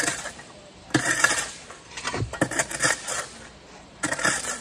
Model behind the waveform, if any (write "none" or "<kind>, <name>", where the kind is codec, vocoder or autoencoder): vocoder, BigVGAN v2